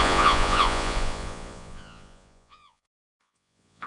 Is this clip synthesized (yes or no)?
yes